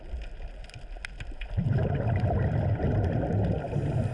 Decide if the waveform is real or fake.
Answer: real